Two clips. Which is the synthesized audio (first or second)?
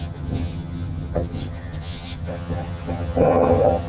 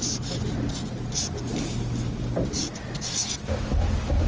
first